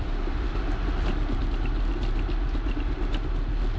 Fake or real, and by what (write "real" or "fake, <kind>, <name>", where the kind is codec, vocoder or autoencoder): real